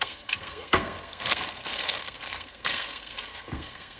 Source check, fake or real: fake